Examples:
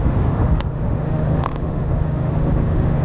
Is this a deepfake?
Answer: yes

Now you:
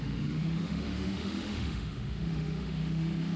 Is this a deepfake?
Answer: yes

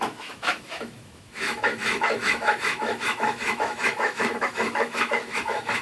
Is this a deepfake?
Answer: yes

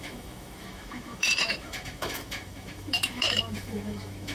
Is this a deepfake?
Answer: yes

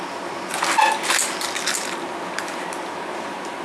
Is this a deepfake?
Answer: no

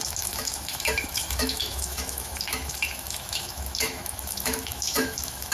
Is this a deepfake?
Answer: yes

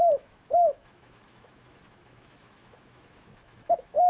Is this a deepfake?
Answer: yes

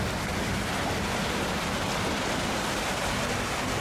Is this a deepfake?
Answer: no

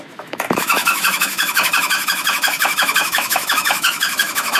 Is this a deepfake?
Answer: yes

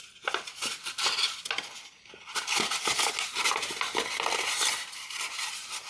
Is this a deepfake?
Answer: no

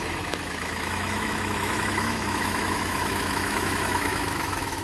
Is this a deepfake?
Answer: yes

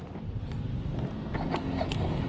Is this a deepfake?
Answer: no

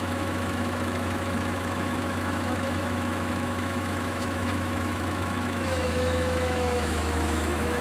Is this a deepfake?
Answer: yes